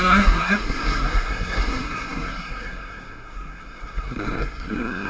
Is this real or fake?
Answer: fake